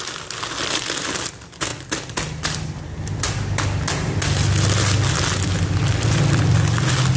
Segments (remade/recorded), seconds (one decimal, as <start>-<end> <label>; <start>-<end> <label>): 0.0-7.2 recorded